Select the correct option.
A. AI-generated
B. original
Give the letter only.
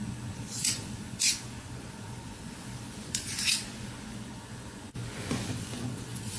A